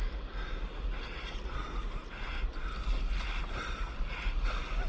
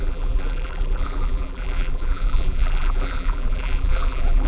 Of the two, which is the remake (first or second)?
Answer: second